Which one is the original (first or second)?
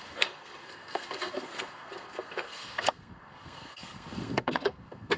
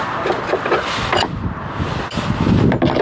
second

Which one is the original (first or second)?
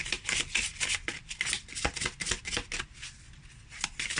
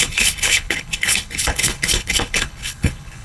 first